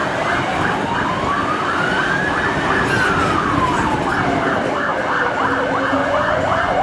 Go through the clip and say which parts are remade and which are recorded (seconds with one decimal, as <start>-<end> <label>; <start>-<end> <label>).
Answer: 0.0-6.0 recorded; 6.0-6.8 remade